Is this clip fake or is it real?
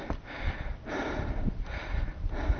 real